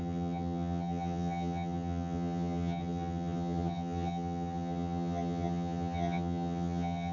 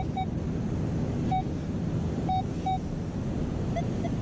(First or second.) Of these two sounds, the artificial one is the first